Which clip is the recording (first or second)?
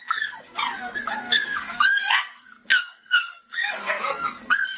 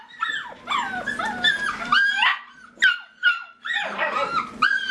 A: second